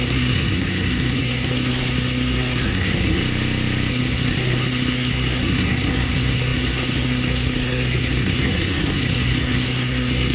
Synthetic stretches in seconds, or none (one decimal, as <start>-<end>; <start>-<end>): 0.0-3.2; 3.9-10.3